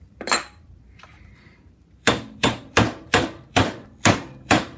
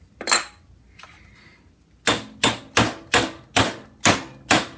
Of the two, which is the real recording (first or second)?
second